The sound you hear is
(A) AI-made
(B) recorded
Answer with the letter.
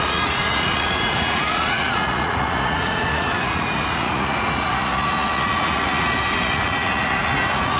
A